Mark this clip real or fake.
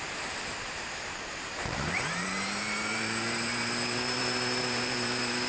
fake